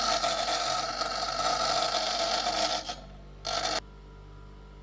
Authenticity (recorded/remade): recorded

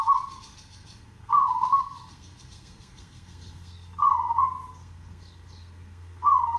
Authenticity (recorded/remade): remade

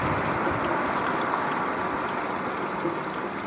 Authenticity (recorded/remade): recorded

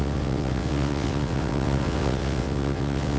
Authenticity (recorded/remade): remade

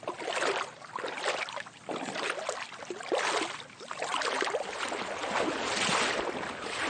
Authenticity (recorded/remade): recorded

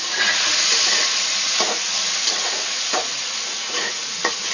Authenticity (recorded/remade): remade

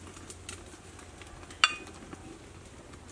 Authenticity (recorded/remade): recorded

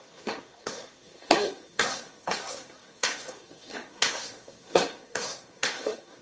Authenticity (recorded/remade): remade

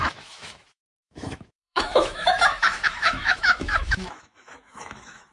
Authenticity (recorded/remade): remade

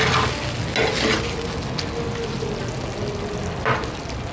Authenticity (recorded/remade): recorded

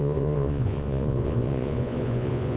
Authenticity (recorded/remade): remade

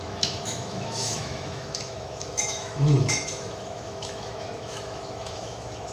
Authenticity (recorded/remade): remade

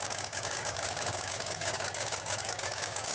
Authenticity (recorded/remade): remade